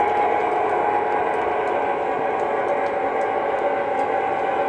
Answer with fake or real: real